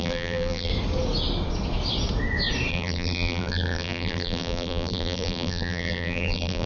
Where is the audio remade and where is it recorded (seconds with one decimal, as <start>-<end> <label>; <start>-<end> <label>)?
0.0-0.7 remade; 0.7-2.7 recorded; 2.7-6.7 remade